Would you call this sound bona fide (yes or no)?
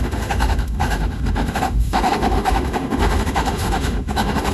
no